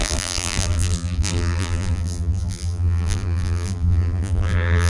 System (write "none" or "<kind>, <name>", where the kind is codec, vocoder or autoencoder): vocoder, BigVGAN v2